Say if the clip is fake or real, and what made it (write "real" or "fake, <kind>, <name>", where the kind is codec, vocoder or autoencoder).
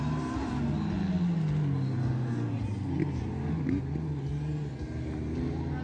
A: real